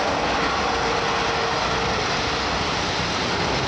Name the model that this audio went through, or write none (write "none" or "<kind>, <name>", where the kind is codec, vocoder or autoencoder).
none